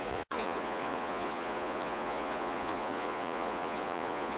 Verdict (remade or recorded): remade